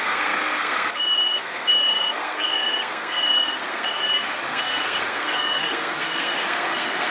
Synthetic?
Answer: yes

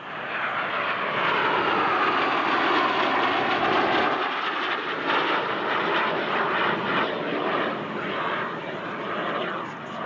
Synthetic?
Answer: no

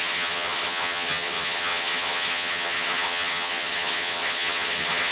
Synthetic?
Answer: yes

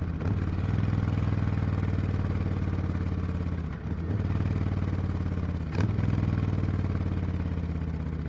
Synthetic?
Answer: no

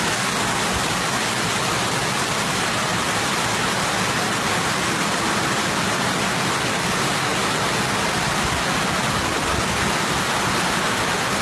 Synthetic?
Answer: no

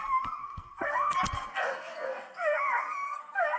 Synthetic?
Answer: yes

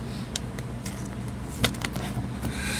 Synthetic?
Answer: no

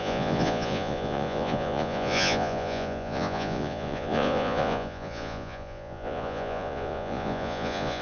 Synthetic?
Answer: yes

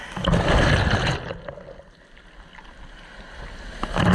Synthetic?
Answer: no